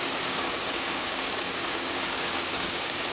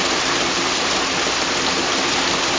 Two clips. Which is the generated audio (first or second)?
first